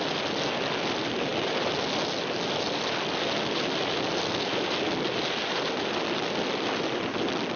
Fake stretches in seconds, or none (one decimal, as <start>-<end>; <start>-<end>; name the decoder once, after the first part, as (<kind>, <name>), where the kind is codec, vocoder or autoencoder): none